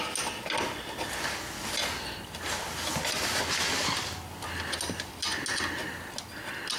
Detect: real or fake real